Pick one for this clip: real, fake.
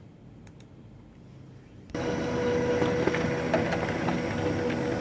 real